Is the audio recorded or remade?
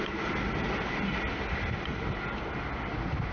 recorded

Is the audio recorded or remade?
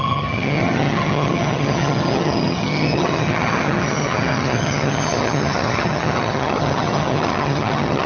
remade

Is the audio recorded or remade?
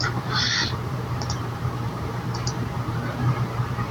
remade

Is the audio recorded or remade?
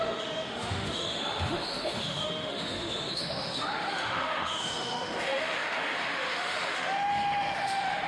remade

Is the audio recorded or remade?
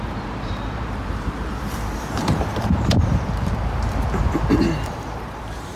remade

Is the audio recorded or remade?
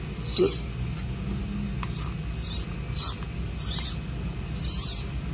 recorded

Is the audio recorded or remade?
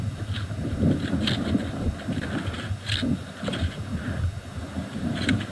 recorded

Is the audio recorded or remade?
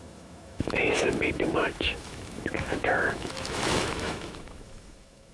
remade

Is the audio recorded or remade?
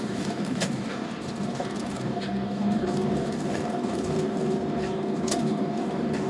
remade